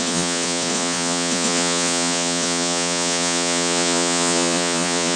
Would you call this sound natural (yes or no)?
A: no